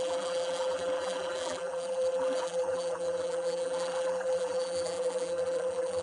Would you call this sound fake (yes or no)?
yes